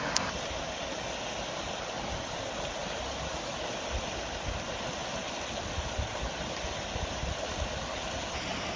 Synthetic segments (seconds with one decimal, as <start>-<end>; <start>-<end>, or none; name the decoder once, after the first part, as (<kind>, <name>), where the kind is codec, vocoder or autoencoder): none

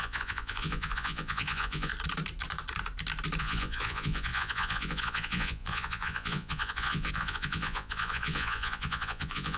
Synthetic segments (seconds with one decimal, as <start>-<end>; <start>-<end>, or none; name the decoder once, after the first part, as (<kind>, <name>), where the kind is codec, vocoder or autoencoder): 0.0-1.9 (vocoder, Vocos); 3.4-9.6

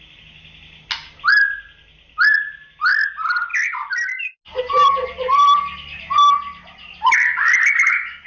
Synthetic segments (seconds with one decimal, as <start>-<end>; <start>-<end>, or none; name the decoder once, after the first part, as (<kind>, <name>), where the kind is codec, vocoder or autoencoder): none

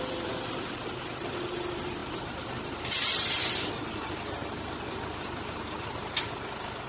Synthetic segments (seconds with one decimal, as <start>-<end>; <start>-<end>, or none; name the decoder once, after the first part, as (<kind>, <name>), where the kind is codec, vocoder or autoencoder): 0.0-6.9 (vocoder, BigVGAN v2)